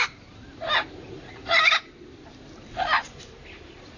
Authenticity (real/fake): real